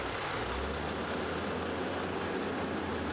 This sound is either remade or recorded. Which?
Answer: recorded